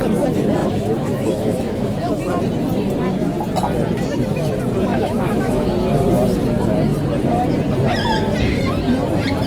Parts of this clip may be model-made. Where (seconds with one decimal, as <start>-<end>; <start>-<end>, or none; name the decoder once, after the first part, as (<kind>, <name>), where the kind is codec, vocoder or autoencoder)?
0.6-2.1 (autoencoder, DAC-VAE); 4.9-5.7